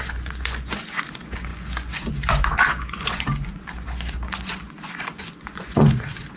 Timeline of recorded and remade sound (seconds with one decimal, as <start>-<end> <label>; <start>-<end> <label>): 0.0-6.4 remade